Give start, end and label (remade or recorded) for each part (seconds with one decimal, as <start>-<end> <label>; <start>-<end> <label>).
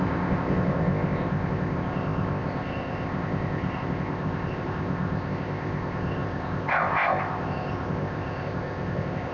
0.0-9.3 remade